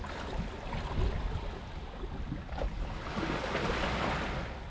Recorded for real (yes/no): yes